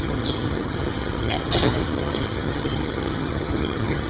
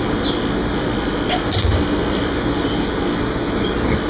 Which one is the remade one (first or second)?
first